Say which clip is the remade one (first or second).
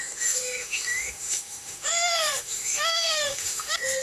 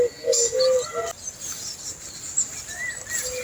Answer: first